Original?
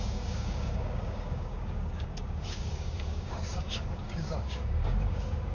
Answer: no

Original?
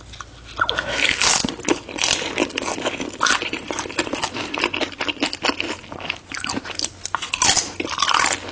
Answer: yes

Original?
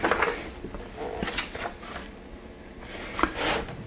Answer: yes